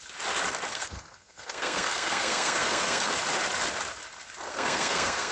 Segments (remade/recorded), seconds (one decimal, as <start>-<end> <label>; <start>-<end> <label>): 0.0-0.7 recorded; 0.7-3.1 remade; 3.1-4.5 recorded; 4.5-5.3 remade